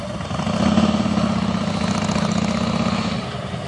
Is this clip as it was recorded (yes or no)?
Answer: yes